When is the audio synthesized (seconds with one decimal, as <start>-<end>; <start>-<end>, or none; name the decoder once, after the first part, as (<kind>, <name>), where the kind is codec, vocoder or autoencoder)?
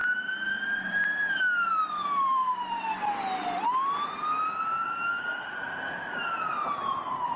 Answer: 1.7-2.4 (vocoder, BigVGAN v2); 5.2-7.4